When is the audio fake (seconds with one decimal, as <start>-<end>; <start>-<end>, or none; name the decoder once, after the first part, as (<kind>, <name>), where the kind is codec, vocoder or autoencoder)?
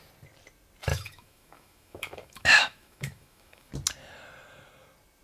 0.9-3.7 (autoencoder, DAC-VAE)